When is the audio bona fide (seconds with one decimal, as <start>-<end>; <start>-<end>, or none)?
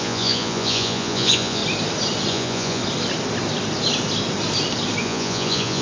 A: 1.6-2.3; 2.8-5.0